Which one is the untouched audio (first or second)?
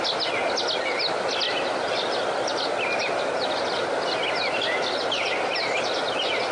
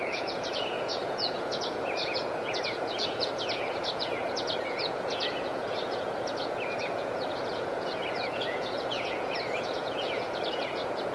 first